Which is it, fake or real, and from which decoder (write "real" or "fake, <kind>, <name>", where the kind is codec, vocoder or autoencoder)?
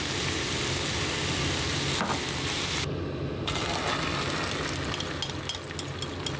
real